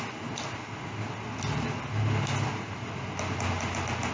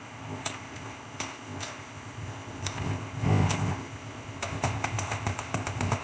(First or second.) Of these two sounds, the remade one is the second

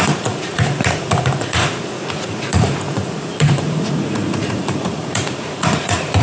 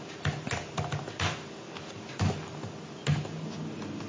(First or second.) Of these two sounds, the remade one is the first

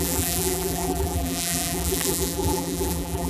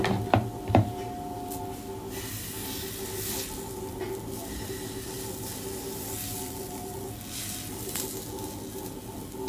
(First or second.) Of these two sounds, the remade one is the first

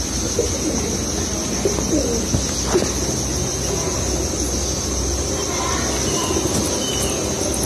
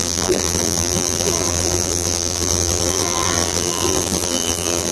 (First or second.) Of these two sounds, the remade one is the second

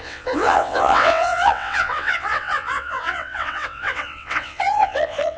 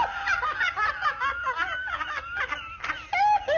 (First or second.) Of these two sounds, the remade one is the first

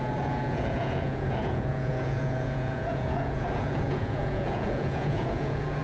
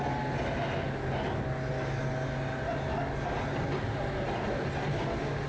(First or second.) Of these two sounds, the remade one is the first